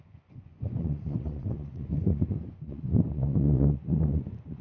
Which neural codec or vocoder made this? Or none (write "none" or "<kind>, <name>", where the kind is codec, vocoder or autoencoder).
vocoder, Vocos